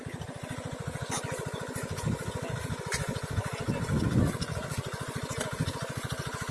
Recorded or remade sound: recorded